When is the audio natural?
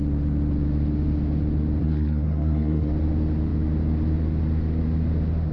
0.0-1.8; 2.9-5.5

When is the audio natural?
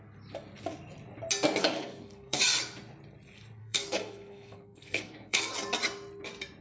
0.0-1.6; 2.4-3.6; 5.5-6.6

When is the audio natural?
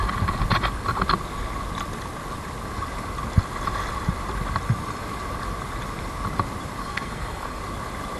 0.0-6.8; 7.6-8.2